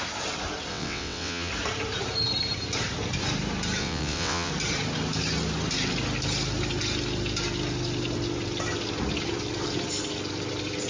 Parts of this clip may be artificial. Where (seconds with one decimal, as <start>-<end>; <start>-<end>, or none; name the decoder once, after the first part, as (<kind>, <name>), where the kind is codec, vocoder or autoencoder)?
0.7-1.5 (vocoder, WaveNeXt); 3.8-4.5